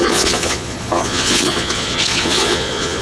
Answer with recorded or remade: remade